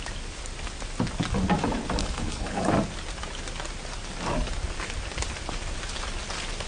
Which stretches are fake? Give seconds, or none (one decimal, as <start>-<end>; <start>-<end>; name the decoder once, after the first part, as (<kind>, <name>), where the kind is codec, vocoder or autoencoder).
2.0-2.7 (codec, HILCodec)